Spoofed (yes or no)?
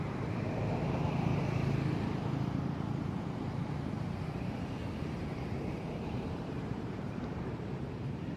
yes